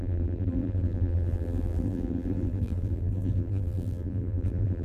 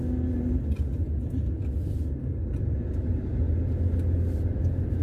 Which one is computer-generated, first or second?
first